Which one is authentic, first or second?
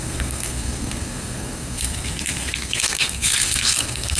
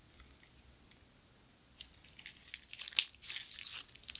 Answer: second